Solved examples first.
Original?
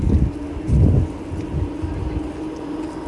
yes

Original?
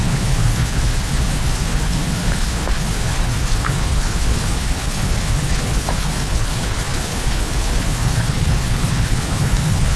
no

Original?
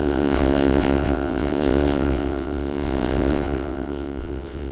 no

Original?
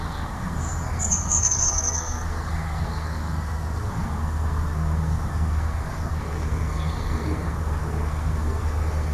no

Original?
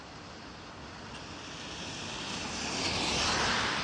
yes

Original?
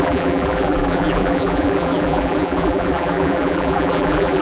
no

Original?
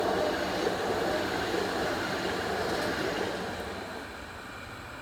yes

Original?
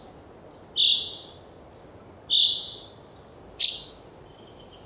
yes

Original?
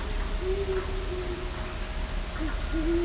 yes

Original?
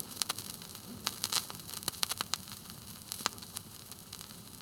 no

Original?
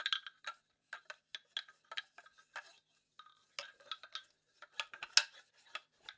yes